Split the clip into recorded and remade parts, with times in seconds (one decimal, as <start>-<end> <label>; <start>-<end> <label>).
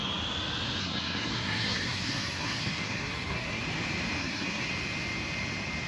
0.0-0.8 recorded; 0.8-3.6 remade; 3.6-4.2 recorded; 4.2-4.7 remade; 4.7-5.9 recorded